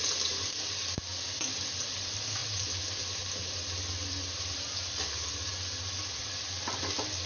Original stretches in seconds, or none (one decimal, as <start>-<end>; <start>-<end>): 0.0-7.3